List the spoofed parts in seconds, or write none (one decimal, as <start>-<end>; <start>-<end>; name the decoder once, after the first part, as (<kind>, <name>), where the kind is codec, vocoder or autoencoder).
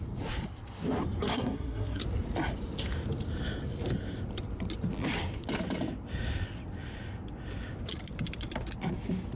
1.3-2.0 (codec, SNAC)